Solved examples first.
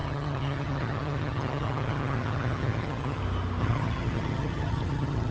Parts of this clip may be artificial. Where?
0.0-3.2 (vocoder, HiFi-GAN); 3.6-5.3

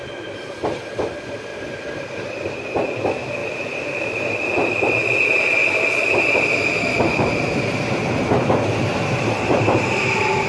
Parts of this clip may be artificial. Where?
1.5-2.5 (vocoder, BigVGAN v2); 3.4-5.0; 5.6-10.5

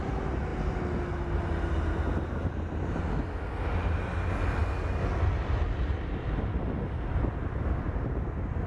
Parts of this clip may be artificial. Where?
none

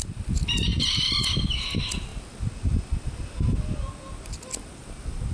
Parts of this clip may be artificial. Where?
none

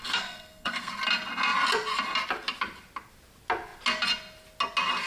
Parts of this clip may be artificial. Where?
0.0-0.9 (codec, SNAC)

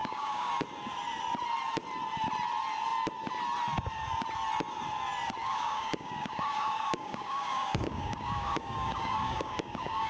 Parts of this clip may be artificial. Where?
0.0-0.5 (codec, DAC); 5.4-10.1

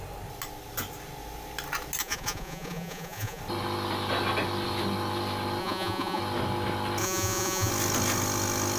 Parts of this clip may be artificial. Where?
2.0-3.4 (vocoder, Vocos); 5.6-6.2; 7.0-7.7